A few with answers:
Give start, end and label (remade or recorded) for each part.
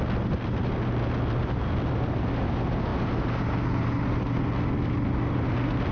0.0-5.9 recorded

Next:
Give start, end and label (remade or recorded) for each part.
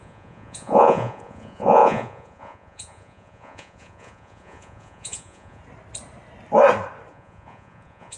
0.0-5.6 remade; 5.6-7.1 recorded; 7.1-8.2 remade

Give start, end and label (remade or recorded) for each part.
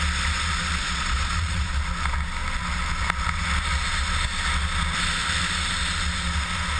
0.0-0.8 recorded; 0.8-1.7 remade; 1.7-6.8 recorded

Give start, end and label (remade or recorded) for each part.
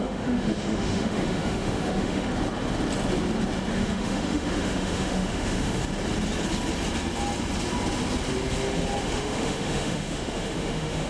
0.0-2.3 remade; 2.3-3.7 recorded; 3.7-5.8 remade; 5.8-9.0 recorded; 9.0-11.1 remade